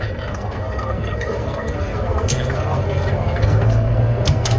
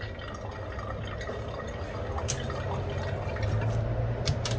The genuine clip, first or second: second